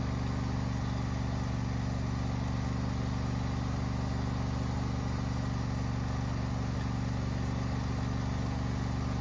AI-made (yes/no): no